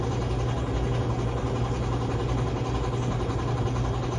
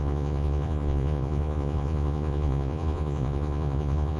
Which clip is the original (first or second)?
first